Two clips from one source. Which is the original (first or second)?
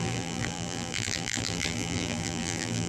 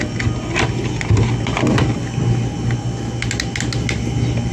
second